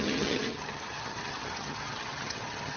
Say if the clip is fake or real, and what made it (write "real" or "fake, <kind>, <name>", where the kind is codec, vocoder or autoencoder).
fake, vocoder, HiFi-GAN